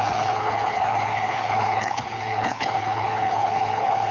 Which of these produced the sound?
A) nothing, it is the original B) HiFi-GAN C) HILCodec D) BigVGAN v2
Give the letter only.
C